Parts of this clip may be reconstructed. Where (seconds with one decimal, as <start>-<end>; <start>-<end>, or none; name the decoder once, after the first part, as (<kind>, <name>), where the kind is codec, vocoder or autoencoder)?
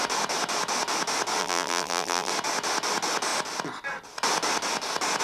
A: 1.4-2.3 (vocoder, BigVGAN v2)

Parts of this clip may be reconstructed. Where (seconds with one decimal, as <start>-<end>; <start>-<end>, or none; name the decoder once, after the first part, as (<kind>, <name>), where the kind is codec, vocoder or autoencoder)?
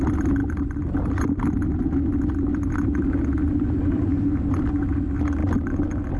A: none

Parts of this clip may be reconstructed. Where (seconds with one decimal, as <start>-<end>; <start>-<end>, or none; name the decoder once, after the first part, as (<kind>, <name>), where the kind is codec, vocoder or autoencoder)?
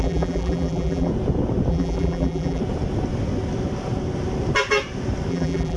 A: 0.0-1.1 (vocoder, BigVGAN v2); 1.7-2.6; 5.3-5.8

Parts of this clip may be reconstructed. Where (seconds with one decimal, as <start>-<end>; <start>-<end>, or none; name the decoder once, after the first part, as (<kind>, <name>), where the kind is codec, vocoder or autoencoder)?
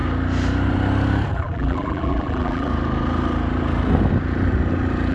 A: 1.3-2.7 (vocoder, BigVGAN v2)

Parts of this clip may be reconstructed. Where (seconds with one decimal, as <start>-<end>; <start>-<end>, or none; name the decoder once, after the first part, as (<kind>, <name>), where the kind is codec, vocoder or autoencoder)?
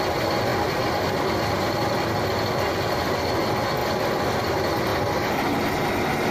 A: 0.5-1.9 (vocoder, BigVGAN v2); 3.8-4.5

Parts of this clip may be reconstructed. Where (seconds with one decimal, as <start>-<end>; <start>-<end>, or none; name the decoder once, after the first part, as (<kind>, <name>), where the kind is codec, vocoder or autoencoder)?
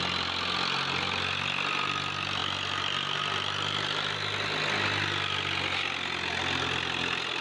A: none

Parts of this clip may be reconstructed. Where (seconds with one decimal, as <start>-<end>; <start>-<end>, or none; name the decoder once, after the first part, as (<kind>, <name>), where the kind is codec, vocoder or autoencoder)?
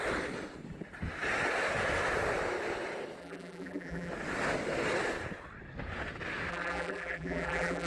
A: 3.2-4.1 (vocoder, BigVGAN v2); 6.5-7.9